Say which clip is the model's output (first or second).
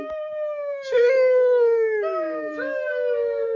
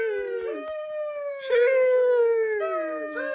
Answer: first